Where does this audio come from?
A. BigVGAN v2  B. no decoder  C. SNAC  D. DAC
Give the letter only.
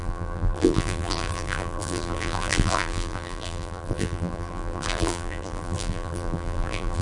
A